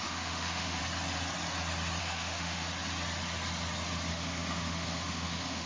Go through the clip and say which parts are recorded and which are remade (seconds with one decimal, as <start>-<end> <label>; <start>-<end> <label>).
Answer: 0.0-0.8 remade; 0.8-2.0 recorded; 2.0-2.7 remade; 2.7-4.1 recorded; 4.1-5.7 remade

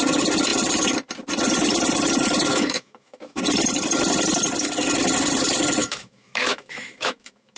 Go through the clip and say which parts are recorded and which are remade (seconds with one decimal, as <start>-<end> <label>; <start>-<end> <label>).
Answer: 0.0-2.5 recorded; 2.5-3.4 remade; 3.4-5.8 recorded; 5.8-7.6 remade

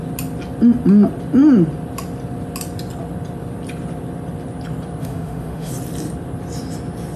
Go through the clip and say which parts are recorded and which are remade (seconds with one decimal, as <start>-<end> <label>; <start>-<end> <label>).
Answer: 0.0-5.0 recorded; 5.0-5.7 remade; 5.7-7.2 recorded

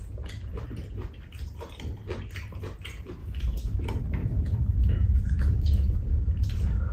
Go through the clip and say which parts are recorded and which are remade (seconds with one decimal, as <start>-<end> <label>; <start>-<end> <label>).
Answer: 0.0-3.2 recorded; 3.2-3.8 remade; 3.8-4.2 recorded; 4.2-6.1 remade; 6.1-6.9 recorded

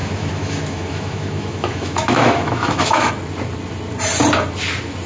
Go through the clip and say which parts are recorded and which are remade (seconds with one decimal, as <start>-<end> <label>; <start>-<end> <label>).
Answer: 0.0-3.1 remade; 3.1-5.1 recorded

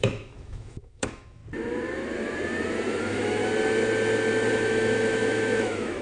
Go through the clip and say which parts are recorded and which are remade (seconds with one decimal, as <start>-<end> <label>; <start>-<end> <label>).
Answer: 0.0-1.4 remade; 1.4-3.0 recorded; 3.0-3.4 remade; 3.4-4.5 recorded; 4.5-6.0 remade